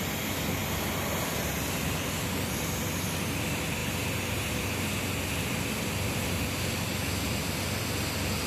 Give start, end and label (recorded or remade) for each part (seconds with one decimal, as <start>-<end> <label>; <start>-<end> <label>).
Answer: 0.0-0.6 recorded; 0.6-3.4 remade; 3.4-8.5 recorded